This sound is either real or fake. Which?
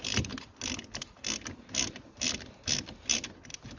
real